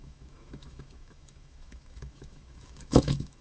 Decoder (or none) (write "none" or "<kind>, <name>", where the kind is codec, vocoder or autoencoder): autoencoder, DAC-VAE